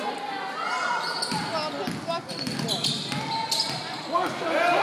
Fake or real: real